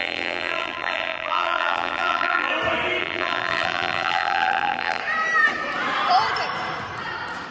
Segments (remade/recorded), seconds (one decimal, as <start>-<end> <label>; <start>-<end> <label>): 0.0-2.5 remade; 2.5-3.0 recorded; 3.0-5.0 remade; 5.0-7.5 recorded